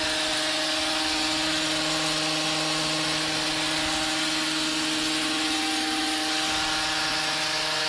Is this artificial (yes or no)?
no